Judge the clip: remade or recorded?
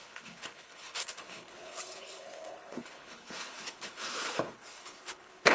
remade